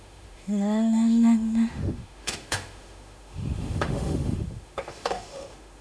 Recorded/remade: remade